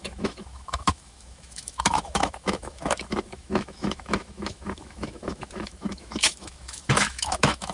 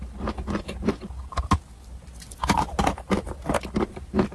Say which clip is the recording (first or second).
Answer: second